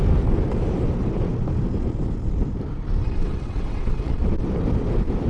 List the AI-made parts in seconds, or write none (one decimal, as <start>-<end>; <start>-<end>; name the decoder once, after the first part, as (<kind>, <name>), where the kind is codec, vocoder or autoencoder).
3.0-4.2 (vocoder, WaveNeXt)